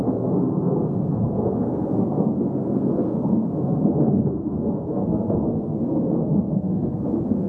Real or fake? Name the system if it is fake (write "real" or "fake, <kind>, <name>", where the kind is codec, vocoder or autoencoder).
fake, codec, SNAC